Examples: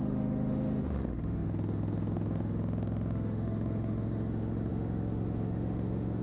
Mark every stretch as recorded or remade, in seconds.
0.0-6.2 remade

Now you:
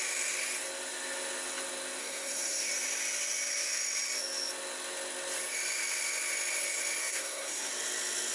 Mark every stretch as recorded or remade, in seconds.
0.0-2.0 recorded; 2.0-2.7 remade; 2.7-7.0 recorded; 7.0-7.7 remade; 7.7-8.3 recorded

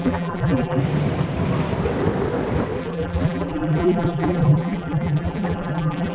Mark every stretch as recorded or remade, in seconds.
0.0-0.8 remade; 0.8-2.8 recorded; 2.8-6.1 remade

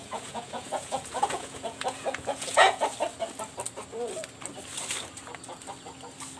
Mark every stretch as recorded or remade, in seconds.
0.0-2.8 remade; 2.8-6.4 recorded